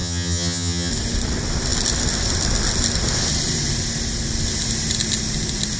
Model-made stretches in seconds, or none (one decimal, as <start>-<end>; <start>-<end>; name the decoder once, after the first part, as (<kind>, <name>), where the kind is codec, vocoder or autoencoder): 0.0-0.9 (vocoder, HiFi-GAN)